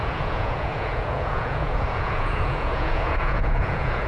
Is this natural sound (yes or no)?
no